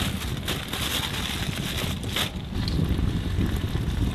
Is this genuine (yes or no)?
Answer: yes